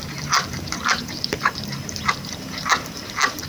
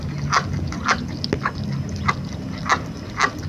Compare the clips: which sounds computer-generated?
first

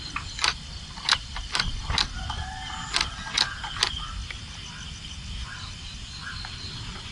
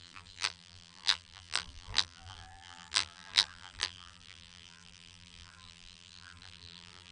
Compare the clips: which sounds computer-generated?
second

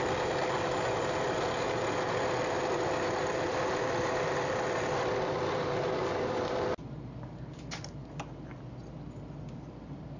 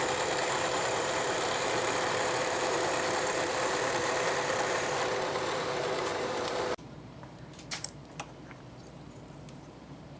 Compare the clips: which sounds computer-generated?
second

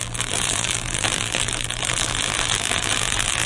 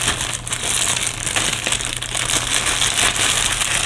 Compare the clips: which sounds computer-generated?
first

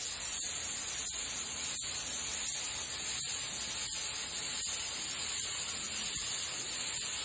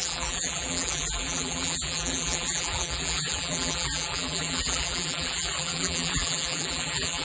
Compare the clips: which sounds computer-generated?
second